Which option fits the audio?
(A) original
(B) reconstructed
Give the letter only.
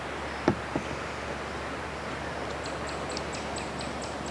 A